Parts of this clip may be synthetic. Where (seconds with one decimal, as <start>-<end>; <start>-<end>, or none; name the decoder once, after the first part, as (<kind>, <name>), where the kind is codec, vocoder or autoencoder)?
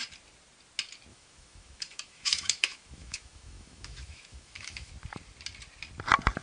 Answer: 1.1-4.9 (autoencoder, DAC-VAE)